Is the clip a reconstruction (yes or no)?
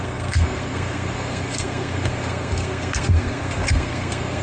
yes